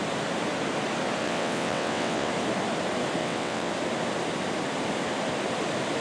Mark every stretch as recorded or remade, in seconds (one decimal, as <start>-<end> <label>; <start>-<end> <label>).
0.0-1.2 recorded; 1.2-2.3 remade; 2.3-3.2 recorded; 3.2-3.7 remade; 3.7-6.0 recorded